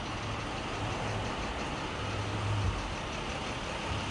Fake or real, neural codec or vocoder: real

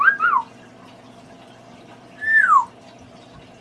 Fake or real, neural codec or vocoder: real